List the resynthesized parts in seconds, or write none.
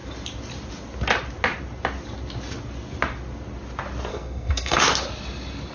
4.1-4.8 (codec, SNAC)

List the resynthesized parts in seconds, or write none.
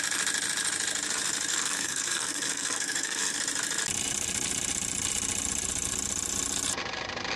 1.5-3.4 (codec, SNAC)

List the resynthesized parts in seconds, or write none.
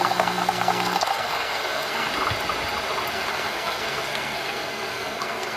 0.0-2.1 (codec, SNAC); 3.1-5.6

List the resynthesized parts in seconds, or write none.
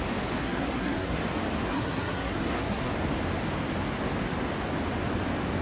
0.4-1.2 (codec, SNAC); 1.7-2.9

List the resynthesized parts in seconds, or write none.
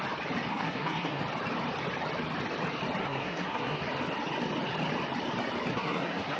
0.5-1.2 (codec, SNAC); 3.0-3.8; 5.7-6.4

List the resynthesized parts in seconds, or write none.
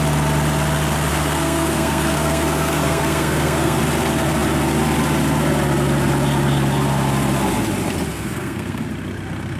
1.1-3.8 (codec, SNAC); 8.1-8.9